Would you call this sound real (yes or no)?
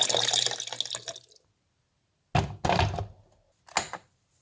yes